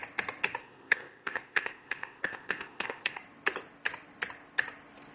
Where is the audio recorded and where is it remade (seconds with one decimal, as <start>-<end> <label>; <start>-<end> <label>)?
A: 0.0-0.6 recorded; 0.6-3.2 remade; 3.2-5.1 recorded